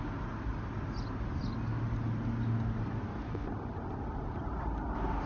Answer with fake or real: real